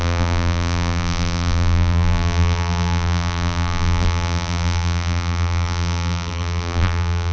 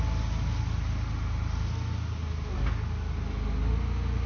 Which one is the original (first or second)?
second